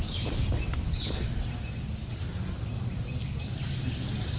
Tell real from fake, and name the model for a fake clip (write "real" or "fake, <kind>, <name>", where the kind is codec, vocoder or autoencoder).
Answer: real